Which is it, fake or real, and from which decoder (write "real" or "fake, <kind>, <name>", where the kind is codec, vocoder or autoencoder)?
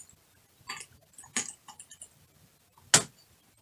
real